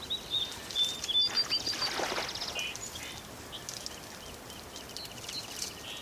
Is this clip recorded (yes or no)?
yes